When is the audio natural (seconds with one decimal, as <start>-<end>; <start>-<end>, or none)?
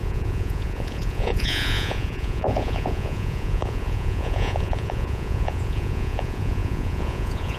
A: none